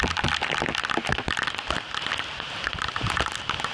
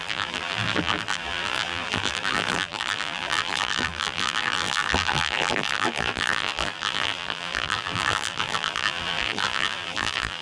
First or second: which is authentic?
first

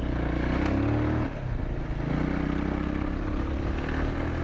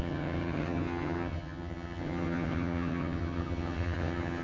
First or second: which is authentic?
first